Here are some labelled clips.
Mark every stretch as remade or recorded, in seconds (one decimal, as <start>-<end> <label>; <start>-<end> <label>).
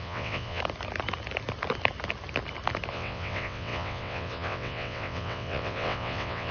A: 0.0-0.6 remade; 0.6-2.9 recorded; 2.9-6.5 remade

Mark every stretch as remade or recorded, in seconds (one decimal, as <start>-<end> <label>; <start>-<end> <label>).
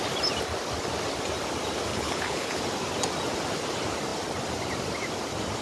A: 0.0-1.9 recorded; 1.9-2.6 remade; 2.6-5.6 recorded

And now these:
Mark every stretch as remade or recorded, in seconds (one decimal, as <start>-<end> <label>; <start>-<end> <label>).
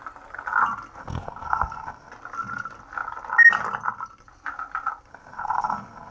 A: 0.0-1.0 recorded; 1.0-2.1 remade; 2.1-5.1 recorded; 5.1-6.1 remade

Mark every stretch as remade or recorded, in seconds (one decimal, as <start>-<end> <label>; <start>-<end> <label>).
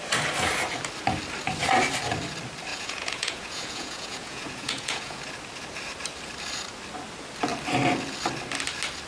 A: 0.0-2.7 recorded; 2.7-5.2 remade; 5.2-9.1 recorded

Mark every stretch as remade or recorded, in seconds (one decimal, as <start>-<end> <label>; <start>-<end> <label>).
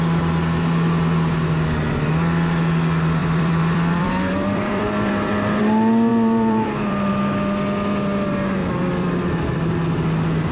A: 0.0-3.2 recorded; 3.2-5.6 remade; 5.6-6.1 recorded; 6.1-7.1 remade; 7.1-8.6 recorded; 8.6-9.7 remade; 9.7-10.5 recorded